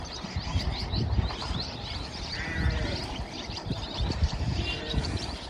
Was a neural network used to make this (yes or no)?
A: yes